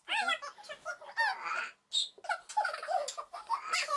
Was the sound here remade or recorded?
recorded